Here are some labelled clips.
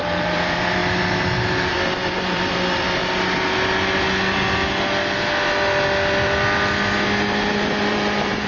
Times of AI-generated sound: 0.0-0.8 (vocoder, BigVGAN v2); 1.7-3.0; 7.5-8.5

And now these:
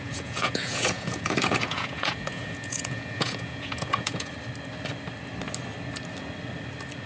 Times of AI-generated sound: 0.0-4.3 (vocoder, Vocos)

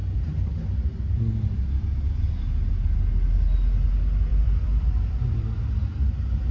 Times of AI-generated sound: 4.3-5.6 (vocoder, BigVGAN v2)

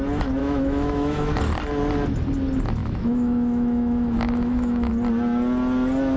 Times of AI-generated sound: 0.4-1.3 (autoencoder, DAC-VAE); 2.8-4.9

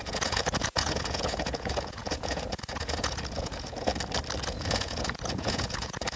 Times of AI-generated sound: 0.0-3.9 (vocoder, Vocos); 4.4-6.2

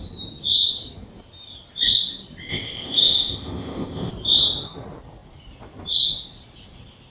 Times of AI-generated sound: 2.5-4.1 (codec, ZipCodec)

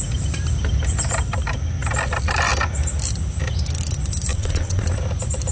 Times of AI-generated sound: 4.3-4.8 (vocoder, WaveNeXt)